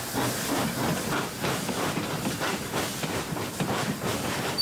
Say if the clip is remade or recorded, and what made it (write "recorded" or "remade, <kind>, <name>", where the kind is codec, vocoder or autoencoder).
remade, vocoder, BigVGAN v2